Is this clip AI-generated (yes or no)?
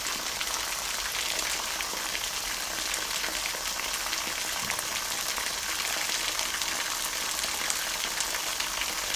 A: no